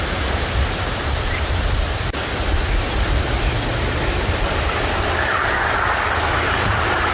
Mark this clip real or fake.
fake